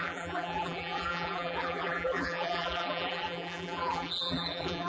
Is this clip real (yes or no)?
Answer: no